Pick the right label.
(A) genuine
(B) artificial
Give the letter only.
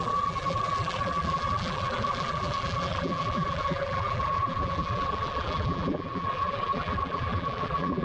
B